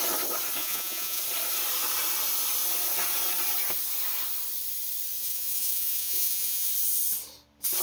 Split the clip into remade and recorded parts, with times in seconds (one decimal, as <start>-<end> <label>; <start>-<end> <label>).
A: 0.0-0.6 recorded; 0.6-1.2 remade; 1.2-5.2 recorded; 5.2-6.7 remade; 6.7-7.8 recorded